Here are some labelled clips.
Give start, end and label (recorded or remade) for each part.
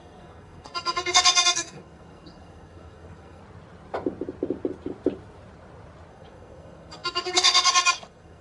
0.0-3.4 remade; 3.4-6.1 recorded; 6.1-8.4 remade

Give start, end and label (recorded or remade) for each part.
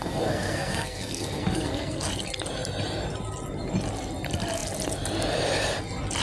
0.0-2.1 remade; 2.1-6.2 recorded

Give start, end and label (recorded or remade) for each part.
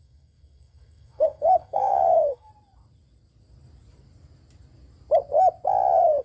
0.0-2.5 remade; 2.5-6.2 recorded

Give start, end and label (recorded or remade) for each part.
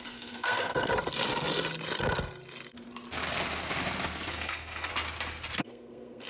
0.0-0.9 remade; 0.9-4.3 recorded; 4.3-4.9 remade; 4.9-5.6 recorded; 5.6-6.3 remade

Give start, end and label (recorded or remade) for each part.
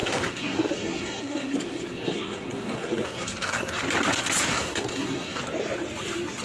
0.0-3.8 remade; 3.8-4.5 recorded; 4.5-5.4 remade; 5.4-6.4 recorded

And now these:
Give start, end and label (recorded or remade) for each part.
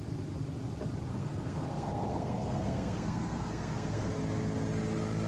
0.0-1.1 recorded; 1.1-4.1 remade; 4.1-5.3 recorded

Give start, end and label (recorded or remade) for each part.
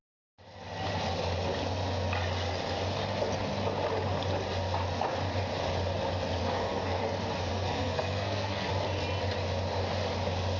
0.0-6.4 recorded; 6.4-7.0 remade; 7.0-7.5 recorded; 7.5-8.7 remade; 8.7-10.6 recorded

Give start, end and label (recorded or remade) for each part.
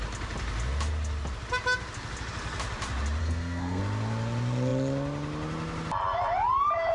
0.0-3.2 recorded; 3.2-3.8 remade; 3.8-6.9 recorded